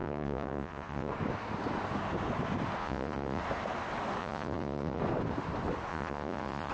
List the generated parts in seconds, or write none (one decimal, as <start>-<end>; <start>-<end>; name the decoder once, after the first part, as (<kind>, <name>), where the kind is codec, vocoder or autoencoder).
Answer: 0.0-1.1 (vocoder, Vocos); 2.8-3.4; 4.2-5.0; 5.9-6.7